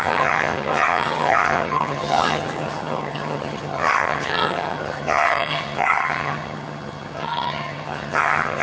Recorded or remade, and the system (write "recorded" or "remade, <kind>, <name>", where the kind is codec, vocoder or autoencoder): remade, vocoder, HiFi-GAN